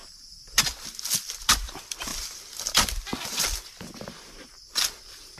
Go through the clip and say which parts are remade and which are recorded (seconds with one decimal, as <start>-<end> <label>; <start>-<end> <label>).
0.0-0.6 remade; 0.6-5.4 recorded